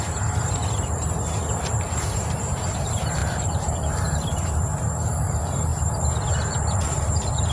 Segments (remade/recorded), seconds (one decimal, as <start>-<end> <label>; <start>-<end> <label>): 0.0-0.6 remade; 0.6-2.2 recorded; 2.2-5.7 remade; 5.7-6.3 recorded; 6.3-7.5 remade